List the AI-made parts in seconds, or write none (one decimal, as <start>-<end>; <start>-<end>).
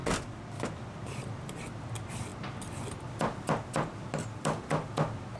0.0-1.6